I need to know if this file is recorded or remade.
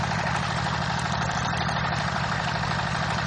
remade